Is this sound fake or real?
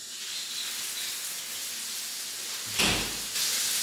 real